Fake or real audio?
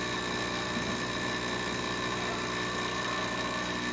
real